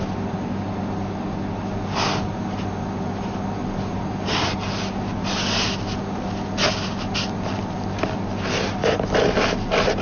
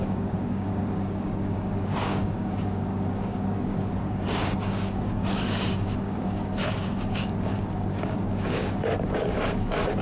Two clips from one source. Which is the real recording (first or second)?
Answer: first